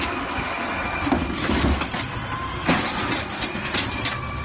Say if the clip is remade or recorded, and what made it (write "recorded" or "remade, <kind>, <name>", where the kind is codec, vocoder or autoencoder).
recorded